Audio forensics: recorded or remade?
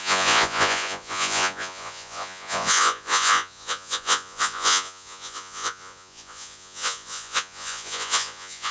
remade